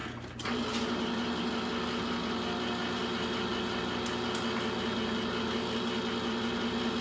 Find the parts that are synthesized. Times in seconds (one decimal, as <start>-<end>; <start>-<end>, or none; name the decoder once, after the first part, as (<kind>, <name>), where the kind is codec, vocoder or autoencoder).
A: none